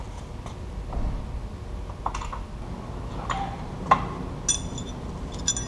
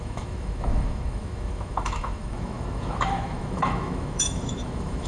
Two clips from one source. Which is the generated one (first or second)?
second